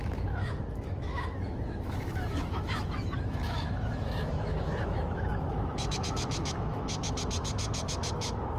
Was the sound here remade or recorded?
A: remade